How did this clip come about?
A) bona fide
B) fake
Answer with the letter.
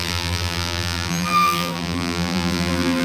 B